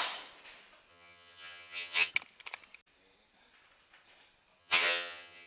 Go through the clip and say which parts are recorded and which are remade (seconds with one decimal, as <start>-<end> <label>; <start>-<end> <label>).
0.0-0.9 recorded; 0.9-2.1 remade; 2.1-4.6 recorded; 4.6-5.5 remade

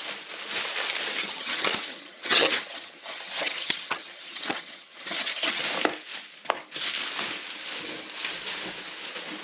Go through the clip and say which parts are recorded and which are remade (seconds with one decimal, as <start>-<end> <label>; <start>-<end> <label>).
0.0-1.2 recorded; 1.2-5.6 remade; 5.6-9.4 recorded

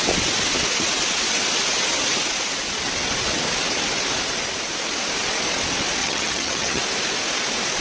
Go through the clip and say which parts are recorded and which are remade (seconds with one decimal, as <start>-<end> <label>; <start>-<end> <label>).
0.0-6.0 recorded; 6.0-6.8 remade; 6.8-7.8 recorded